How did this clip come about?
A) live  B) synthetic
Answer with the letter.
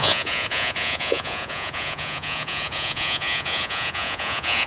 B